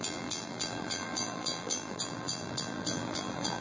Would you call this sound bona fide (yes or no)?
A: no